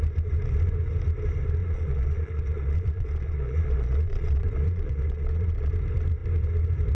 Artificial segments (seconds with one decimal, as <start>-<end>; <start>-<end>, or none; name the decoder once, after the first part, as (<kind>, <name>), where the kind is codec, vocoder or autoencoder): 1.6-5.7 (vocoder, Vocos)